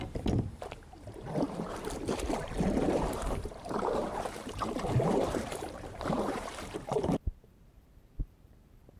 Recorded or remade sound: remade